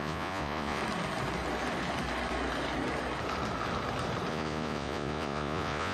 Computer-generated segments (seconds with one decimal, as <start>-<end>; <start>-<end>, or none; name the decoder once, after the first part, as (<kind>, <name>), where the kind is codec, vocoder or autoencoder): 0.0-0.8 (vocoder, Vocos); 4.3-5.9